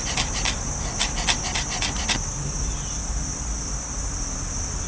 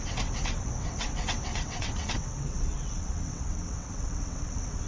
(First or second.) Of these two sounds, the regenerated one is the second